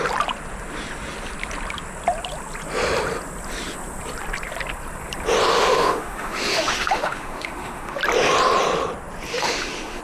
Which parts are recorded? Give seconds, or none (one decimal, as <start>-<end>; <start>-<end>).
0.0-5.5; 8.0-9.3

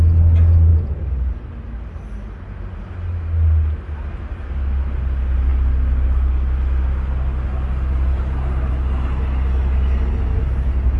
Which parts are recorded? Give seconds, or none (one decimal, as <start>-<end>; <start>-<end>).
0.0-11.0